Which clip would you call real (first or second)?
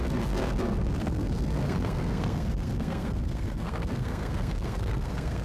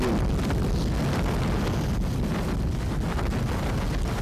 second